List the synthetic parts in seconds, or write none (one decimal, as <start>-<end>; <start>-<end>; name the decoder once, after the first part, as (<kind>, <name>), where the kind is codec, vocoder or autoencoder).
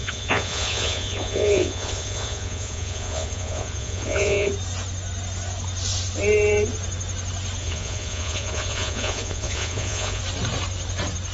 0.0-4.5 (vocoder, Vocos); 7.6-10.2